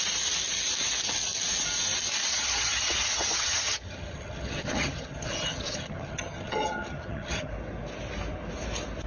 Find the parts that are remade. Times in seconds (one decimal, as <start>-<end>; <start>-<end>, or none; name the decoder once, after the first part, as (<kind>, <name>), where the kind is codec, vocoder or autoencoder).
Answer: 2.3-7.5 (vocoder, HiFi-GAN)